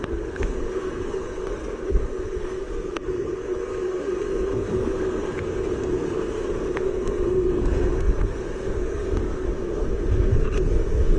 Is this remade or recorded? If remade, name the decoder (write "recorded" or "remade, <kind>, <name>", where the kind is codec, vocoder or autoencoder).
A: remade, codec, SNAC